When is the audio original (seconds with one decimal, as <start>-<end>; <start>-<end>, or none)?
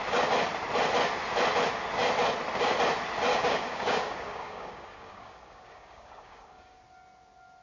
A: 0.0-3.3; 6.8-7.6